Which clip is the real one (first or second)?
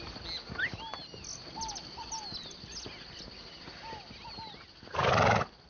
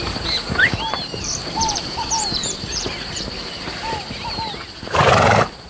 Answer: first